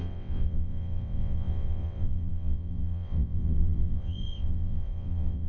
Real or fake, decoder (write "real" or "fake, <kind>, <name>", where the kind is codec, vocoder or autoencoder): fake, vocoder, WaveNeXt